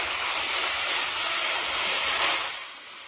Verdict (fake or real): real